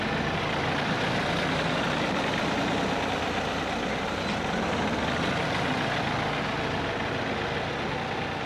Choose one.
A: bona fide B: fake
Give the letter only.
A